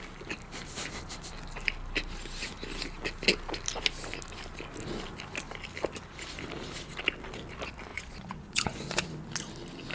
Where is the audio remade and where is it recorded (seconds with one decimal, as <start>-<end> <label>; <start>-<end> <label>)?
0.0-7.9 recorded; 7.9-9.1 remade; 9.1-9.9 recorded